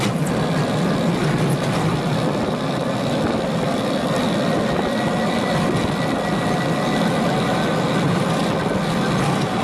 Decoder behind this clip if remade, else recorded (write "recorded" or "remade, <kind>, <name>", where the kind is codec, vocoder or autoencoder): recorded